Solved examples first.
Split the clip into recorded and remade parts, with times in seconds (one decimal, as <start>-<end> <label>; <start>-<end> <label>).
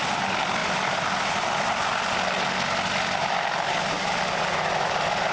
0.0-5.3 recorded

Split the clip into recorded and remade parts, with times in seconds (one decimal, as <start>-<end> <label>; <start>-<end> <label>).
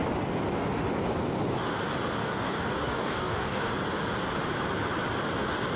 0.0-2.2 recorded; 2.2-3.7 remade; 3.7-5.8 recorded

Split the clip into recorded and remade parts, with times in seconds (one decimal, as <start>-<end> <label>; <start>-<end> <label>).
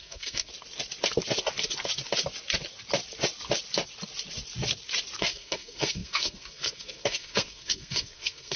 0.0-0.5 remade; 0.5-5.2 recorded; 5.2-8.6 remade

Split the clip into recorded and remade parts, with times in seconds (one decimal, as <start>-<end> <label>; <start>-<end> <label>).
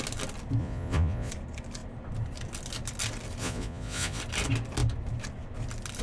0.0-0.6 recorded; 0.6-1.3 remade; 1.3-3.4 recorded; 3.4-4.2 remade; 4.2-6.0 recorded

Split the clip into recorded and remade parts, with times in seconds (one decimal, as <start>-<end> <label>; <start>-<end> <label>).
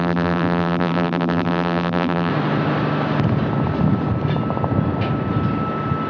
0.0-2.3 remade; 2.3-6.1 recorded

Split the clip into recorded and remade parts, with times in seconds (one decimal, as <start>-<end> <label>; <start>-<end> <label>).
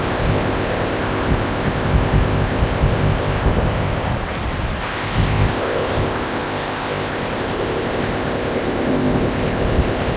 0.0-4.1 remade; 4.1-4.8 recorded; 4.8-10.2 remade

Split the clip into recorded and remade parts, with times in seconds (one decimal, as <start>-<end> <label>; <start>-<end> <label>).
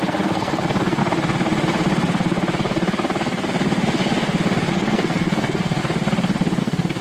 0.0-1.0 remade; 1.0-4.7 recorded; 4.7-5.8 remade; 5.8-6.6 recorded; 6.6-7.0 remade